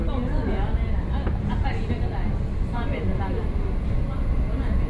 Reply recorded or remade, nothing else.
recorded